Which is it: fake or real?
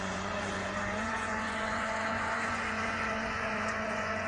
fake